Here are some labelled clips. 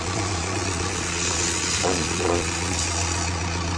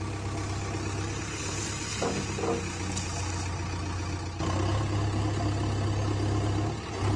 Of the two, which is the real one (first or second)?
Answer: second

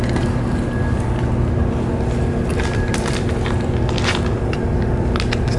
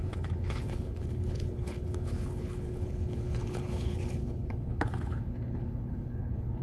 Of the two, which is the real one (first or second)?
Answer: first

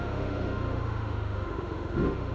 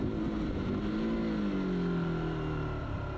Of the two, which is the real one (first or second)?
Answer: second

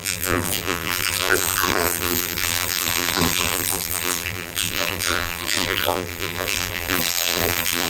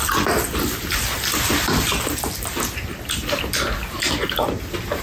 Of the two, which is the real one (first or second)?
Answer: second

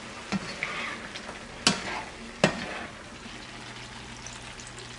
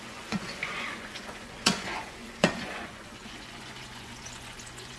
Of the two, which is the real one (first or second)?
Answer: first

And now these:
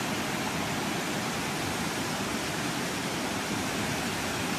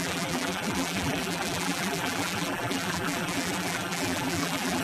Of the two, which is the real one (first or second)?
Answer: first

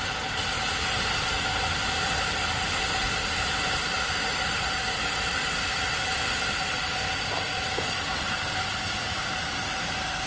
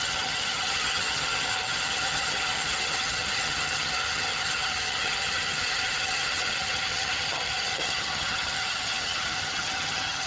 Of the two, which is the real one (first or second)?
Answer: first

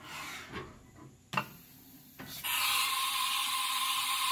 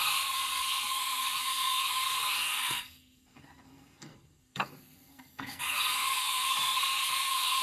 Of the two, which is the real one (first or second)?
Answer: first